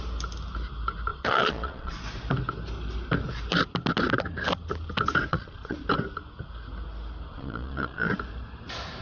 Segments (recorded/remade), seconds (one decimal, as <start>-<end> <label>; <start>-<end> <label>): 0.0-1.1 recorded; 1.1-2.0 remade; 2.0-5.3 recorded; 5.3-5.8 remade; 5.8-7.3 recorded; 7.3-8.1 remade; 8.1-9.0 recorded